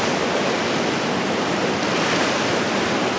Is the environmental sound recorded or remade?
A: recorded